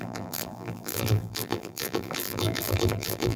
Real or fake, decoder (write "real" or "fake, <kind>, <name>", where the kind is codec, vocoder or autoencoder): fake, vocoder, BigVGAN v2